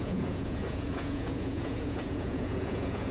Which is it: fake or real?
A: fake